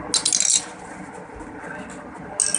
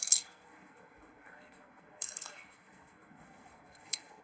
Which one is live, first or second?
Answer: first